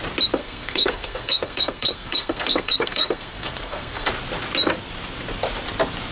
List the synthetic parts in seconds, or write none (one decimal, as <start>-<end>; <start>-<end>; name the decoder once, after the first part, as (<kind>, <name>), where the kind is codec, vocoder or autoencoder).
0.4-4.1 (codec, SNAC)

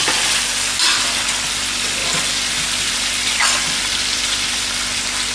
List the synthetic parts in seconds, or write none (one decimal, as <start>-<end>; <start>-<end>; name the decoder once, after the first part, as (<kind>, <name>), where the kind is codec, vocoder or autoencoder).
none